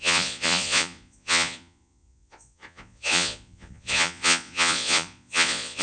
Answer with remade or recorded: remade